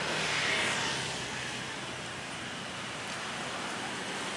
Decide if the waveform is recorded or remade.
recorded